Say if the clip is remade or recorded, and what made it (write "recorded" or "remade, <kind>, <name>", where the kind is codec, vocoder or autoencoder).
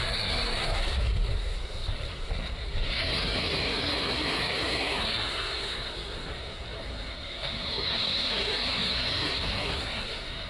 remade, codec, SNAC